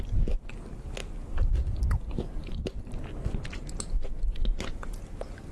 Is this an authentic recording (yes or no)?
yes